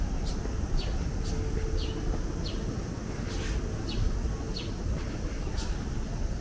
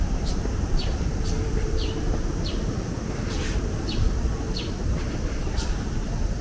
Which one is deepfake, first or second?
second